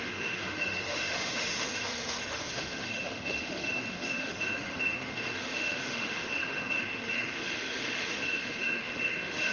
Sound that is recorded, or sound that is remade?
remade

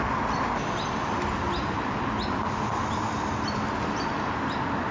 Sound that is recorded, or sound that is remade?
recorded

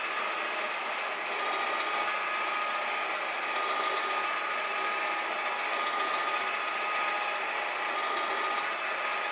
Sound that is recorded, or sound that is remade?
recorded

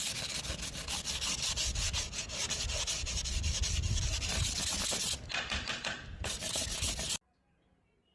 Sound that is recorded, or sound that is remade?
recorded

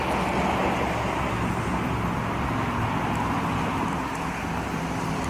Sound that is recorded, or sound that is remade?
recorded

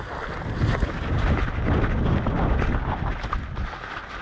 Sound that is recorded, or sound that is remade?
recorded